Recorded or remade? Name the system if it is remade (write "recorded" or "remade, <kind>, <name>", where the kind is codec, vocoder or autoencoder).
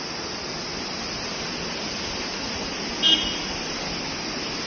recorded